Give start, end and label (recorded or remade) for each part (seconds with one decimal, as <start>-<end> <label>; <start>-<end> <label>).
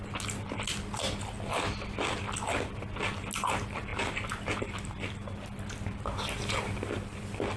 0.0-7.6 recorded